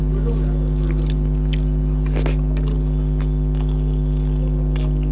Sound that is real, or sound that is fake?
real